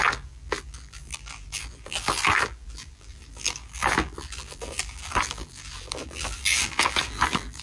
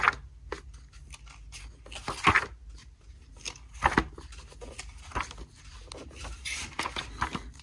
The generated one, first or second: first